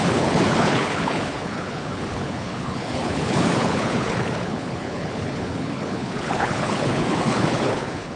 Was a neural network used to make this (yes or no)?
yes